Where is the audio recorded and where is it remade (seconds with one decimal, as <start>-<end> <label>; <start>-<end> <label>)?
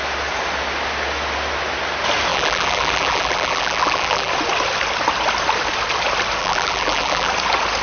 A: 0.0-2.3 recorded; 2.3-4.3 remade; 4.3-6.4 recorded; 6.4-7.3 remade; 7.3-7.8 recorded